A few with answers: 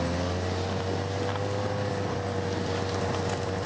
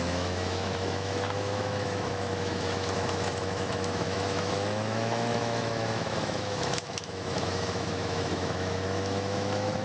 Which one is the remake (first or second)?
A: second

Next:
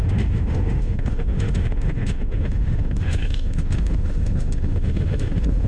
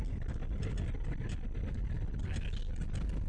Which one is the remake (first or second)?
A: first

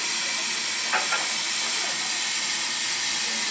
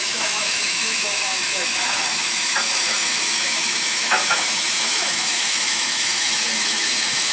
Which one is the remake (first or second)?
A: second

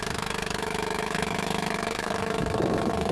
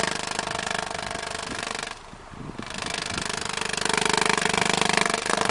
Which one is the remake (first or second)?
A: first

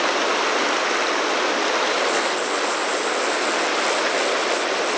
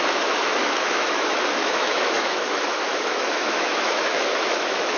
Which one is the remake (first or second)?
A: second